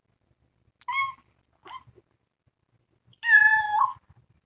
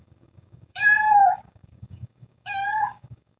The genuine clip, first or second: first